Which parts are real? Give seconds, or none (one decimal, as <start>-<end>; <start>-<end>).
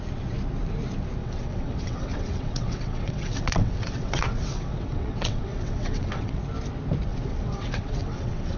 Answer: 0.0-1.2; 6.4-7.1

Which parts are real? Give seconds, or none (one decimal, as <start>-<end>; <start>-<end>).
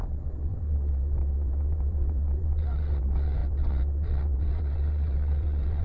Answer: none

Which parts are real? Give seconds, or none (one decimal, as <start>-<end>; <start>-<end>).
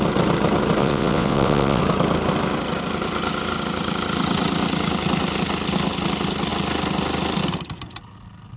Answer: 0.0-0.8; 1.8-8.6